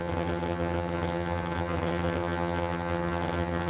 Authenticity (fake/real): fake